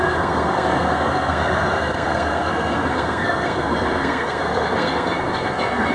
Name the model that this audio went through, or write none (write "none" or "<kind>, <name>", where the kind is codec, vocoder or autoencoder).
codec, SNAC